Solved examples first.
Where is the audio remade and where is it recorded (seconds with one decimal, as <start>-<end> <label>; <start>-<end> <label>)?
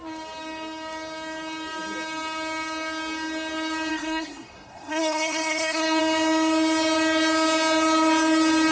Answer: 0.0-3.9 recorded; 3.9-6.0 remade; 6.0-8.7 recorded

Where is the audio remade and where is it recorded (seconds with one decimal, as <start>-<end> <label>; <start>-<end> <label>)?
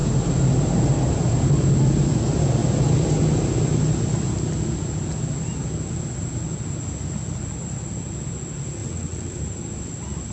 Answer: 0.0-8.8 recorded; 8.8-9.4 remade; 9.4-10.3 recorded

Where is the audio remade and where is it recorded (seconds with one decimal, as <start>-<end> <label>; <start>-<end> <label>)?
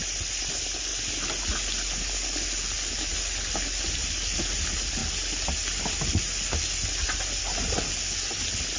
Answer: 0.0-8.8 recorded